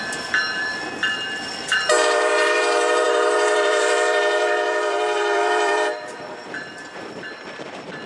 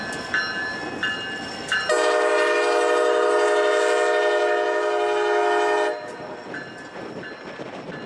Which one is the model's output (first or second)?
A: first